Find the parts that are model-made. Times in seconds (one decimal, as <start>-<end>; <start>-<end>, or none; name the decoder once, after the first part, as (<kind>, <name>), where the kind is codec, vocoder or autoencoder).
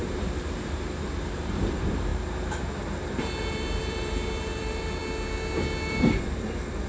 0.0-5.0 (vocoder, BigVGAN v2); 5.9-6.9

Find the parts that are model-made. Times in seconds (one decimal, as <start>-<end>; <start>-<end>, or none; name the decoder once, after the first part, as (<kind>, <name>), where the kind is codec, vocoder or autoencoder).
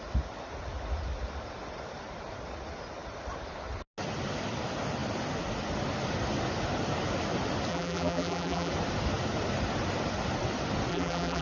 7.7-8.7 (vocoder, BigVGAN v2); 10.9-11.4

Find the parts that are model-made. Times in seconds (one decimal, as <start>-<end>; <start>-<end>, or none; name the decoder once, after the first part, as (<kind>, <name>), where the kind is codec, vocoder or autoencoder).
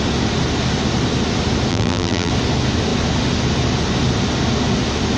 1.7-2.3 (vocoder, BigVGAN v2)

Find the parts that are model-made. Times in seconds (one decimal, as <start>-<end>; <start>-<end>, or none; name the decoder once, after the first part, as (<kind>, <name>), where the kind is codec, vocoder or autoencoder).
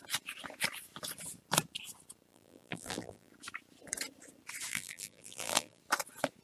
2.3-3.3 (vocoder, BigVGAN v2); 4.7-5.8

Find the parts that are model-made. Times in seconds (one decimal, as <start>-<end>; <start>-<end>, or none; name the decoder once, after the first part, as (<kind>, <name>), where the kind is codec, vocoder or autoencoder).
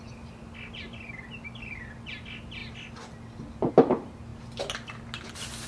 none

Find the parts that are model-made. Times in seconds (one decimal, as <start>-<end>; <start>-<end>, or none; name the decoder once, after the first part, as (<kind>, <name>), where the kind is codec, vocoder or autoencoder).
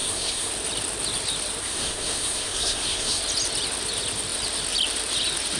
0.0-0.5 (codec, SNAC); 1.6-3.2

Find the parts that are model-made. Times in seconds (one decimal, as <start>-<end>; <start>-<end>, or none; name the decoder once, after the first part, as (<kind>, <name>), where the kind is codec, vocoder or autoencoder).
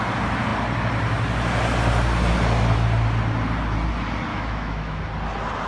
4.3-5.0 (autoencoder, DAC-VAE)